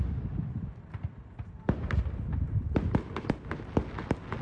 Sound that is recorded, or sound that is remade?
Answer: recorded